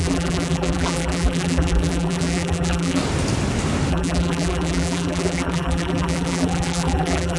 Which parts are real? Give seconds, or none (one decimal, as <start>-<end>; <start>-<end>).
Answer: 3.0-3.9